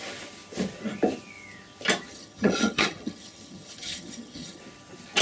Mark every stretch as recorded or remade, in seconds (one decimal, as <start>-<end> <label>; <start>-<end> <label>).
0.0-2.1 recorded; 2.1-4.6 remade; 4.6-5.2 recorded